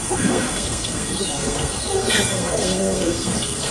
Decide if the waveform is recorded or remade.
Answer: remade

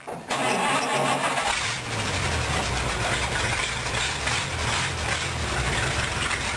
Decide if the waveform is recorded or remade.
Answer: recorded